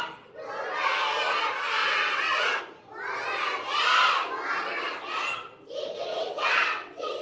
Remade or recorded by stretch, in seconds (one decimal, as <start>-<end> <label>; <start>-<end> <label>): 0.0-1.8 recorded; 1.8-2.6 remade; 2.6-6.1 recorded; 6.1-7.2 remade